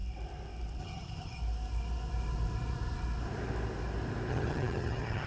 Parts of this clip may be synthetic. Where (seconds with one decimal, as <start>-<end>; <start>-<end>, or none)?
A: 0.8-1.4; 4.3-5.3